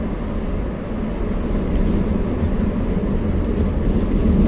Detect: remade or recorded recorded